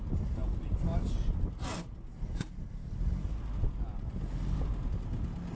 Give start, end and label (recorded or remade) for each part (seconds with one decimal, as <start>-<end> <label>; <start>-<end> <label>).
0.0-5.6 recorded